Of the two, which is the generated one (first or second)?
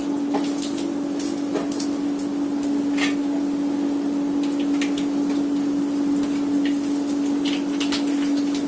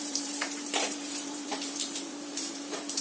second